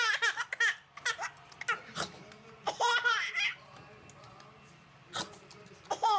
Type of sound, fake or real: real